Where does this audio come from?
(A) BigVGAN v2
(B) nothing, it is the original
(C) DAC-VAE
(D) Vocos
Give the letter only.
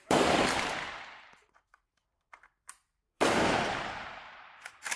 A